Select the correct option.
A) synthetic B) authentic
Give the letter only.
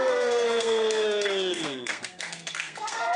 A